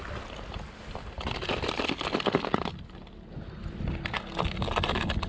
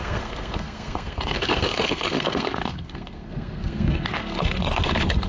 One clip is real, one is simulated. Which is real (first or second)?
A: first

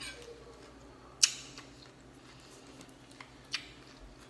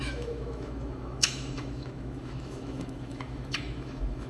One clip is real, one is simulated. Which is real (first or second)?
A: first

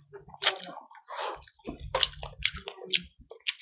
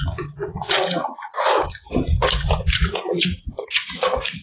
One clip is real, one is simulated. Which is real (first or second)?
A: first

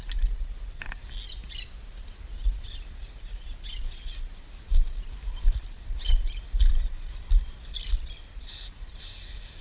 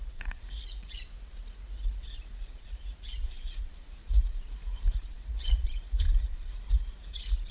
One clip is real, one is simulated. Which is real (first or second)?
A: first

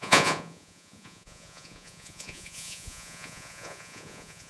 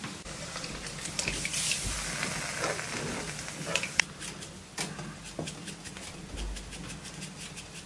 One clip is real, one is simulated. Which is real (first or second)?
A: second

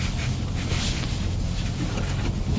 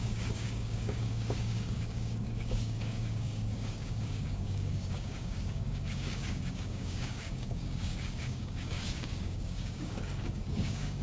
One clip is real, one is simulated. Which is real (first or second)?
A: first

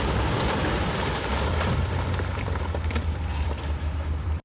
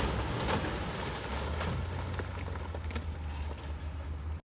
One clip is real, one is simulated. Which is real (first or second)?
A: second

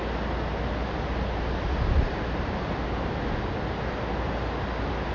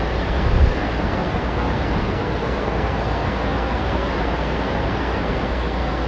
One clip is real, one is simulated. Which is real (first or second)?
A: first